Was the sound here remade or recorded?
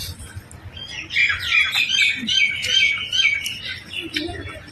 remade